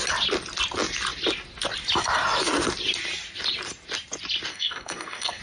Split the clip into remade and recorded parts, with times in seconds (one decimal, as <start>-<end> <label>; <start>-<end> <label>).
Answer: 0.0-4.5 recorded; 4.5-5.4 remade